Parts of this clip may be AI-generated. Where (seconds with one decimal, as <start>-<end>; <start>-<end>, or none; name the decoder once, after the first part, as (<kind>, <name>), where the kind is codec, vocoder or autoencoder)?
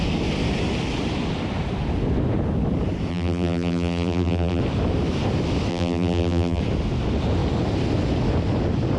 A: 3.1-4.6 (vocoder, BigVGAN v2); 5.7-6.6